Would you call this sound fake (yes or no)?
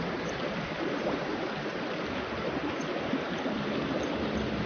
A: yes